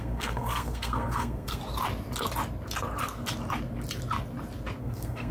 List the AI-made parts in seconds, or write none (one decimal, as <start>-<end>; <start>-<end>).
0.0-1.6; 4.8-5.3